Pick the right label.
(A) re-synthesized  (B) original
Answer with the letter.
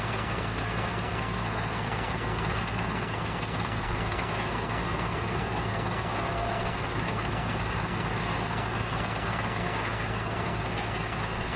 A